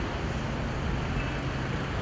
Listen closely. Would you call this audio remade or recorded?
recorded